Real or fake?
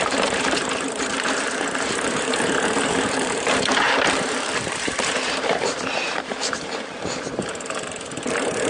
fake